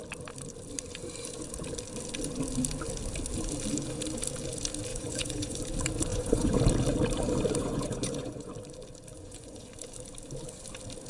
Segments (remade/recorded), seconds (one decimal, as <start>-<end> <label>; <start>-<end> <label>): 0.0-4.9 recorded; 4.9-5.6 remade; 5.6-6.1 recorded; 6.1-6.6 remade; 6.6-7.6 recorded; 7.6-8.5 remade; 8.5-9.1 recorded; 9.1-9.7 remade; 9.7-11.1 recorded